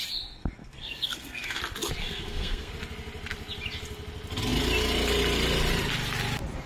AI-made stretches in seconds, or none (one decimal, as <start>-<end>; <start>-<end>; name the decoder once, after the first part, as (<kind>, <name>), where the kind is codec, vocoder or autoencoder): 0.6-1.6 (codec, SNAC); 2.0-2.7